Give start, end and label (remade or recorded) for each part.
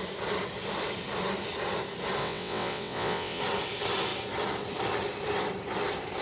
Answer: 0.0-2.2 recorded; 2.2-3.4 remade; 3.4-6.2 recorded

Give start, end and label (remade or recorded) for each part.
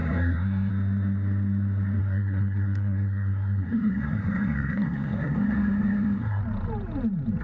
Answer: 0.0-0.7 remade; 0.7-2.0 recorded; 2.0-6.4 remade; 6.4-7.4 recorded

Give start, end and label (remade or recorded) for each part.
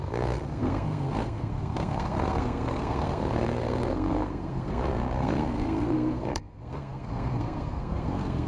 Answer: 0.0-8.5 remade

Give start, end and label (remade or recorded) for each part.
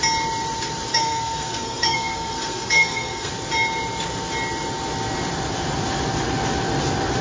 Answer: 0.0-0.9 recorded; 0.9-3.3 remade; 3.3-7.2 recorded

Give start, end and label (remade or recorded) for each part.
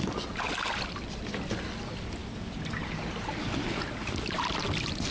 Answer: 0.0-5.1 recorded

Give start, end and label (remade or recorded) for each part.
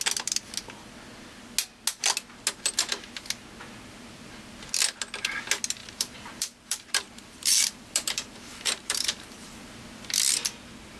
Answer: 0.0-5.8 recorded; 5.8-9.5 remade; 9.5-11.0 recorded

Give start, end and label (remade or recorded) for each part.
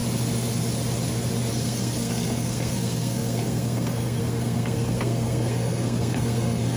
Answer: 0.0-1.5 recorded; 1.5-6.8 remade